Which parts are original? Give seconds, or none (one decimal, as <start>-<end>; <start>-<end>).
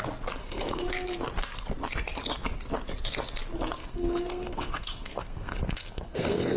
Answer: 0.0-0.4; 0.9-3.7